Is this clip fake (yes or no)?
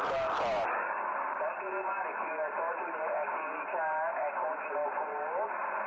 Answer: no